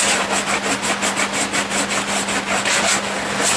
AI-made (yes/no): no